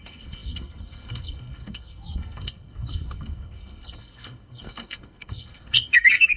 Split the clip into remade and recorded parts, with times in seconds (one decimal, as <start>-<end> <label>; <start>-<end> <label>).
0.0-6.4 remade